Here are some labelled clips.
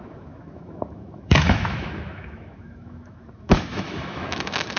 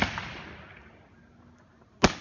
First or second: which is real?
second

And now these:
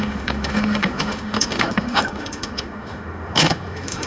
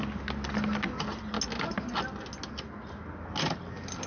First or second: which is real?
second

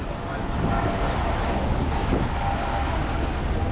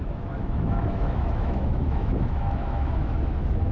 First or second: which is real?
first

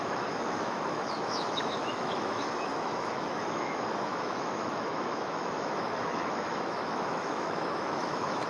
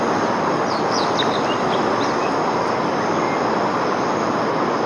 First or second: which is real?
second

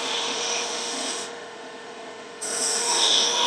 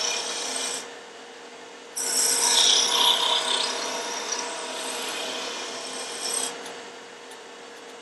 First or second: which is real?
second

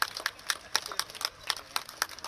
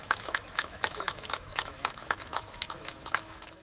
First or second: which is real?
first